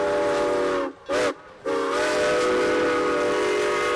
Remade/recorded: recorded